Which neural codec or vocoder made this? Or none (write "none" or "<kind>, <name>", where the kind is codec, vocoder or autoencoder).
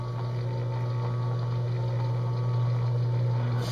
none